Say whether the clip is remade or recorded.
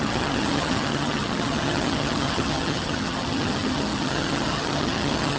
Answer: remade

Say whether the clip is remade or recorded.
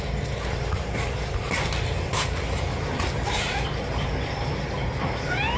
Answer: recorded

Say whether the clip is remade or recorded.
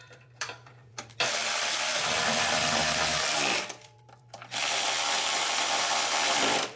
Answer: remade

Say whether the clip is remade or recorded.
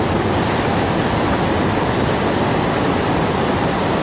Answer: recorded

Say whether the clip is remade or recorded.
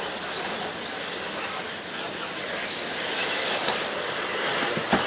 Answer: recorded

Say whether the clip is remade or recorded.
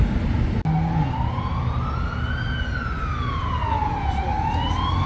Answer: recorded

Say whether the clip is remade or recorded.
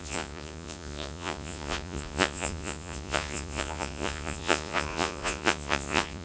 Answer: remade